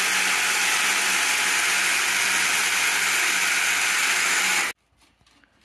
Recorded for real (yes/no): yes